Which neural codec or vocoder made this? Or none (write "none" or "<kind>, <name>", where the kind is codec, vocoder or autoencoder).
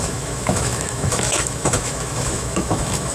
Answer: autoencoder, DAC-VAE